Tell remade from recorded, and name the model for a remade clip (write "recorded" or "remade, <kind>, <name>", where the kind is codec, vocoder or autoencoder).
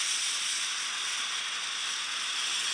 recorded